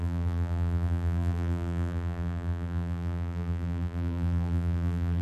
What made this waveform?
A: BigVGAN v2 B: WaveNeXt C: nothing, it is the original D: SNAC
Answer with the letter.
A